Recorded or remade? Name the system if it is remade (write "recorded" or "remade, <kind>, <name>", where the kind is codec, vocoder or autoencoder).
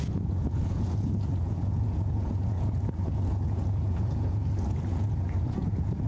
remade, vocoder, Vocos